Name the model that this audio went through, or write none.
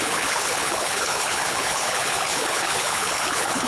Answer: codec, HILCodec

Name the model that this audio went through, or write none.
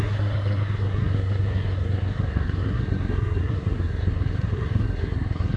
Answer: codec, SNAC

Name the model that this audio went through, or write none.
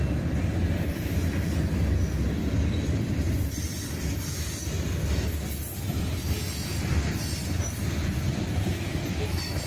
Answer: none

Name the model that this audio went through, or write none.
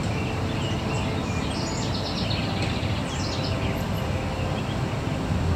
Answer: none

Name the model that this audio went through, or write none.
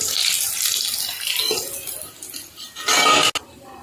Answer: none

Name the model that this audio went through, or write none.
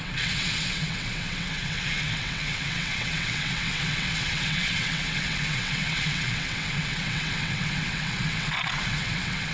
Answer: vocoder, WaveNeXt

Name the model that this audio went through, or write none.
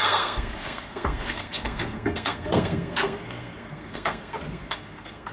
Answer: codec, SNAC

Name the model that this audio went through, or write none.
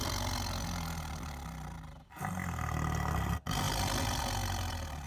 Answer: none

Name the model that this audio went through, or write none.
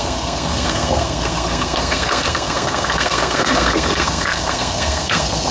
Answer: codec, SNAC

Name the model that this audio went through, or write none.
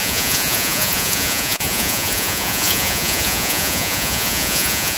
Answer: vocoder, Vocos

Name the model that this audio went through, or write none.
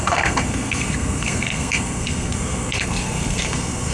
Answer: codec, SNAC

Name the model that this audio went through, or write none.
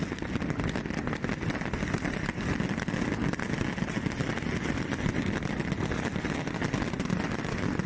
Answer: none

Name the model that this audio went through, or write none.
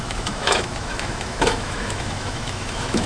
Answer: autoencoder, DAC-VAE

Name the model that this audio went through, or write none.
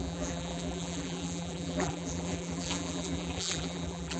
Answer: vocoder, BigVGAN v2